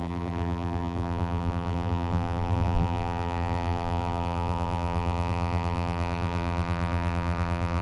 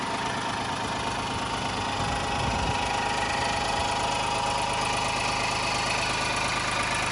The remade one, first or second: first